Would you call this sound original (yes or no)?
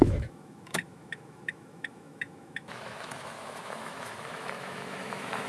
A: no